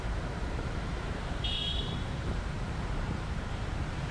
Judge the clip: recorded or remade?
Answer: remade